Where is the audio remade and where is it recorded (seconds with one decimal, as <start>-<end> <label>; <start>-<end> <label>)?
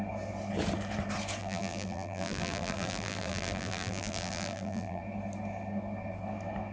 0.0-1.4 recorded; 1.4-5.0 remade; 5.0-6.7 recorded